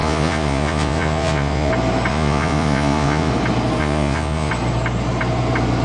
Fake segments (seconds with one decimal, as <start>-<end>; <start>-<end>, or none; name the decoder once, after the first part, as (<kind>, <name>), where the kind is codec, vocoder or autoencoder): 0.0-1.7 (vocoder, Vocos); 2.1-3.3; 3.8-4.5